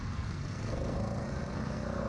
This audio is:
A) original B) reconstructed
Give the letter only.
B